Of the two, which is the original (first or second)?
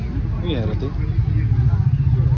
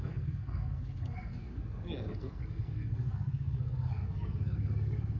first